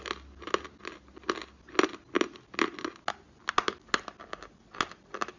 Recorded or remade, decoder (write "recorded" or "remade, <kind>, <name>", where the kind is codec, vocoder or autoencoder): recorded